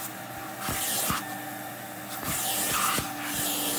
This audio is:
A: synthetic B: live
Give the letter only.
B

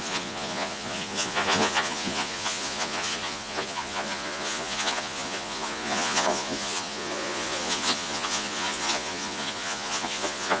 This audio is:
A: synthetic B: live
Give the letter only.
A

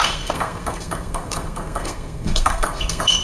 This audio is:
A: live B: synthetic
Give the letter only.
B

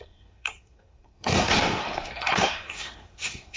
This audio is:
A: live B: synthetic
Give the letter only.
B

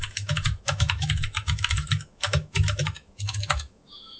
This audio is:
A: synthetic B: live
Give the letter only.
A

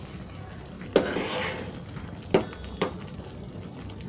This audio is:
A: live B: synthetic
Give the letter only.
A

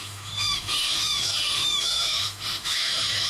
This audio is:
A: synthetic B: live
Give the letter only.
A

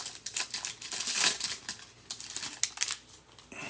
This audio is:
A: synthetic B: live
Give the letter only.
B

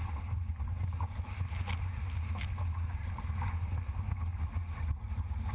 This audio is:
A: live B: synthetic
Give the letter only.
A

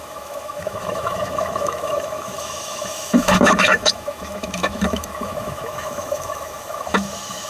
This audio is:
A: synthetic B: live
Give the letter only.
A